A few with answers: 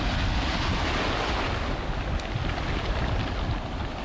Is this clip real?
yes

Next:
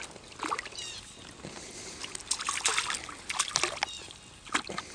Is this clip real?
yes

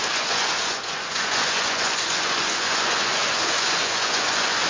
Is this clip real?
no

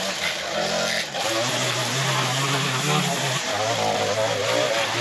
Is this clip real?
yes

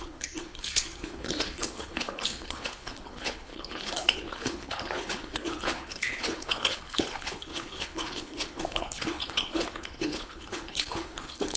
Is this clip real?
no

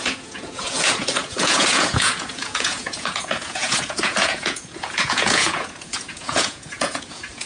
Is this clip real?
no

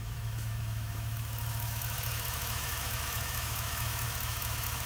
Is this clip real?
no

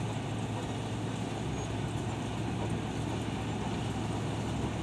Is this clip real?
yes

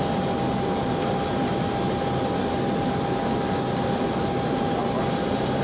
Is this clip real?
yes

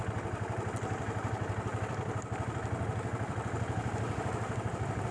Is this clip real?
no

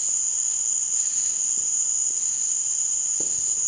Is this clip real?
yes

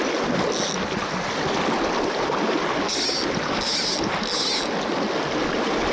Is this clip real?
yes